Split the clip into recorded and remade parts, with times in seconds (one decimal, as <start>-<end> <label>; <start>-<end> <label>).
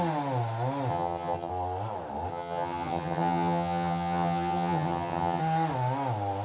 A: 0.0-0.9 recorded; 0.9-1.5 remade; 1.5-2.3 recorded; 2.3-5.4 remade; 5.4-6.4 recorded